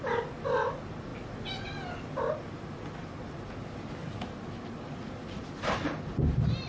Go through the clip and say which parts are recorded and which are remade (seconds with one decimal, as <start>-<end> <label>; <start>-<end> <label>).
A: 0.0-1.1 recorded; 1.1-2.2 remade; 2.2-6.7 recorded